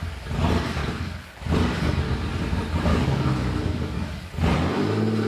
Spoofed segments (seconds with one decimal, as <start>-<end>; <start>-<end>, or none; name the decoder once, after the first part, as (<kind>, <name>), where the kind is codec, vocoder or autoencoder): 0.8-1.4 (codec, DAC); 2.9-4.3